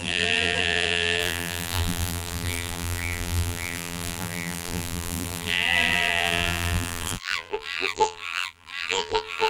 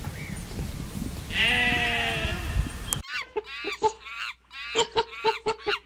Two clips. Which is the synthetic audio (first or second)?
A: first